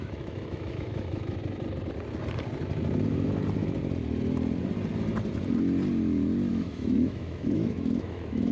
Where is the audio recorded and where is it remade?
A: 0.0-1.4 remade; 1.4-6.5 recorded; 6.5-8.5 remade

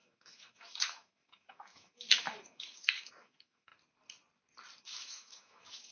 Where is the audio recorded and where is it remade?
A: 0.0-3.7 remade; 3.7-4.8 recorded; 4.8-5.9 remade